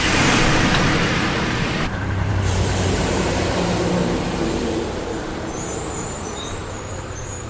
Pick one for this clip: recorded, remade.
remade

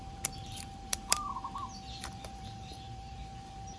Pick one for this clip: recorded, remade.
remade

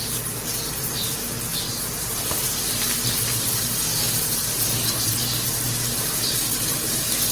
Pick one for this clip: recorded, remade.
remade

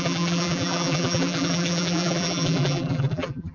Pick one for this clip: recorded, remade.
remade